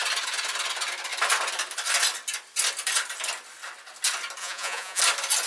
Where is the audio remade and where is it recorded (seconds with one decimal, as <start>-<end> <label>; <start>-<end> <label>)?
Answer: 0.0-4.4 recorded; 4.4-5.0 remade; 5.0-5.5 recorded